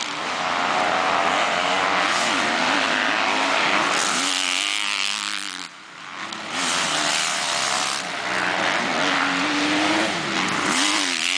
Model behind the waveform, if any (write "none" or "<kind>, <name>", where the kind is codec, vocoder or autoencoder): none